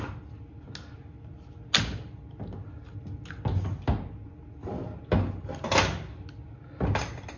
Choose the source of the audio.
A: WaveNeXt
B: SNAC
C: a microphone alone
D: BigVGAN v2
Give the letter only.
C